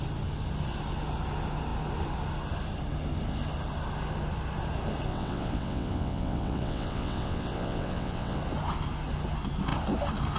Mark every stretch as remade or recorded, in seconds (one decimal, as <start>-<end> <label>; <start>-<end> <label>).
0.0-5.1 recorded; 5.1-8.4 remade; 8.4-10.4 recorded